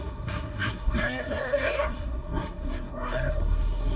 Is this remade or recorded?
remade